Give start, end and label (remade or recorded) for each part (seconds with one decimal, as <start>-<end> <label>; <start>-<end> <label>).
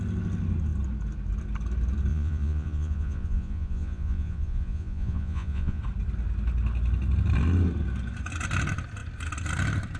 0.0-2.1 recorded; 2.1-5.8 remade; 5.8-10.0 recorded